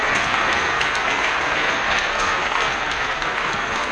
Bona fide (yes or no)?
no